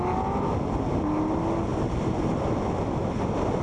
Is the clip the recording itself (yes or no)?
yes